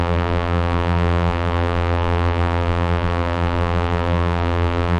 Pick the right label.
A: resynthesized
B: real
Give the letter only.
A